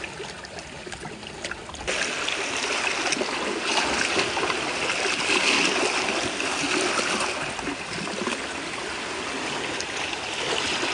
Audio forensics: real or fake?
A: real